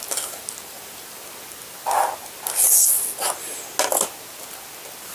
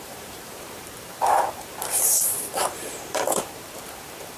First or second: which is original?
first